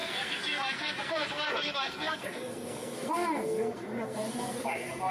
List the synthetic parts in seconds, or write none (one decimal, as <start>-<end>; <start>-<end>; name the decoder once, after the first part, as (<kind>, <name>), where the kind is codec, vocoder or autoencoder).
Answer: 0.0-5.1 (codec, SNAC)